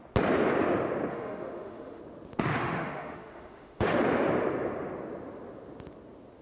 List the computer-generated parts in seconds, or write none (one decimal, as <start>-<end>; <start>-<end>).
1.1-2.0; 2.5-4.0